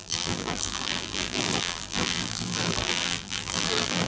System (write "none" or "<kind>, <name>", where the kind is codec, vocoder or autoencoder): vocoder, BigVGAN v2